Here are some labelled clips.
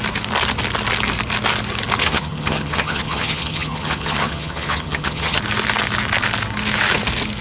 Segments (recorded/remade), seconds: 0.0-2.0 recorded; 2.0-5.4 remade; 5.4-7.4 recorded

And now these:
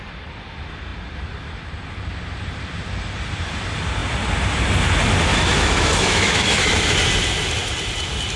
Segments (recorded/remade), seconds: 0.0-5.3 recorded; 5.3-6.7 remade; 6.7-8.4 recorded

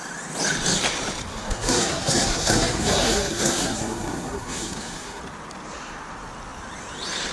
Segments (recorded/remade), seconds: 0.0-1.3 recorded; 1.3-5.2 remade; 5.2-7.3 recorded

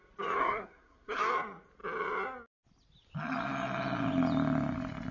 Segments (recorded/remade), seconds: 0.0-0.4 recorded; 0.4-1.2 remade; 1.2-5.1 recorded

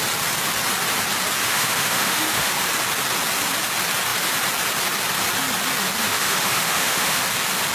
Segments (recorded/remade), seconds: 0.0-1.4 recorded; 1.4-2.5 remade; 2.5-6.0 recorded; 6.0-7.2 remade; 7.2-7.7 recorded

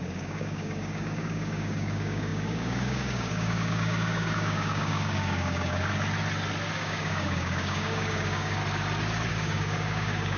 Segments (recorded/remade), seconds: 0.0-5.9 remade; 5.9-6.7 recorded; 6.7-8.6 remade; 8.6-9.3 recorded; 9.3-10.4 remade

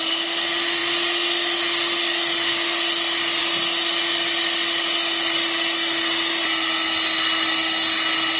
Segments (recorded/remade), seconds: 0.0-8.4 recorded